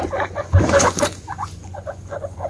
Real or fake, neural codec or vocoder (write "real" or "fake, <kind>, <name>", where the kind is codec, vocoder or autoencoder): fake, vocoder, Vocos